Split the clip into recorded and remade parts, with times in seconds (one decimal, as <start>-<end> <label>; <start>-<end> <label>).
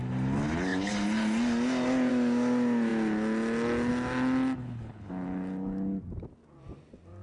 0.0-4.6 recorded; 4.6-5.1 remade; 5.1-7.2 recorded